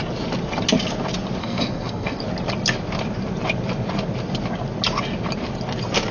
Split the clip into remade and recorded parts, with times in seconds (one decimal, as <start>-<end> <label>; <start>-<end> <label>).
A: 0.0-1.4 recorded; 1.4-2.2 remade; 2.2-6.1 recorded